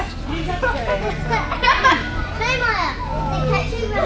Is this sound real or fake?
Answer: real